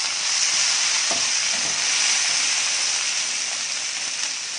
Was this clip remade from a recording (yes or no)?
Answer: no